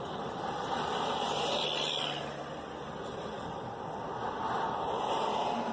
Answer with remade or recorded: recorded